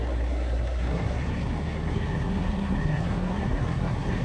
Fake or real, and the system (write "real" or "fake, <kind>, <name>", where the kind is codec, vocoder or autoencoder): fake, codec, SNAC